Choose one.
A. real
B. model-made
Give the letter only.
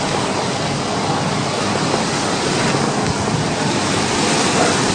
A